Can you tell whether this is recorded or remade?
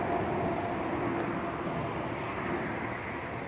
recorded